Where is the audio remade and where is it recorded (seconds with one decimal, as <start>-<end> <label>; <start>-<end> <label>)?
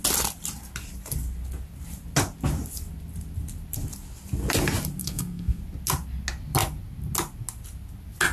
0.0-5.0 recorded; 5.0-5.6 remade; 5.6-8.3 recorded